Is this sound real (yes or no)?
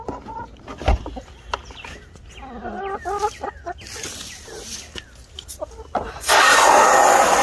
yes